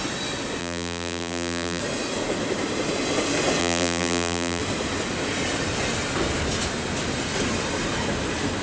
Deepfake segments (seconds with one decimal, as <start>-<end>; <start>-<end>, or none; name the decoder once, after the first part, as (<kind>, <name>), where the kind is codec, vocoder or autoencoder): 0.6-1.8 (vocoder, BigVGAN v2); 3.6-4.6